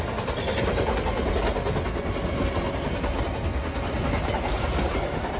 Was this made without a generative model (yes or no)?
yes